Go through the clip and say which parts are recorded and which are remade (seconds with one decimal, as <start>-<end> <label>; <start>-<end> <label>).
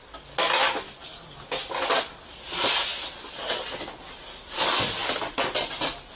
0.0-6.2 recorded